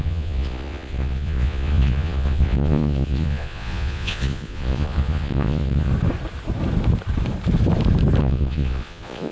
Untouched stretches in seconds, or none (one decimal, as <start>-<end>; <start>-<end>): 5.9-8.2